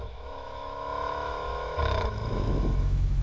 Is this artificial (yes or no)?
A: yes